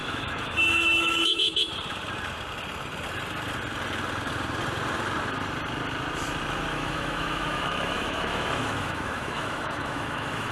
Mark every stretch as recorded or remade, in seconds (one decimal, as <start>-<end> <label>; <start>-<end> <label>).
0.0-1.7 remade; 1.7-6.7 recorded; 6.7-10.5 remade